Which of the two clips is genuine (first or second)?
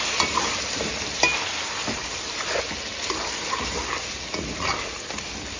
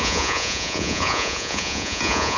first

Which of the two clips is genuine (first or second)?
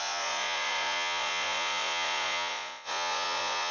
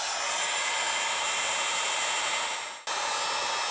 second